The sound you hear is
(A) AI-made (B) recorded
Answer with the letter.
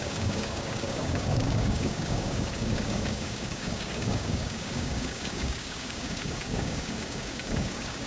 A